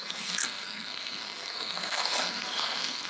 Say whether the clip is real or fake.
fake